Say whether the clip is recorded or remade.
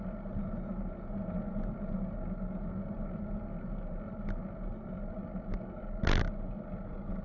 recorded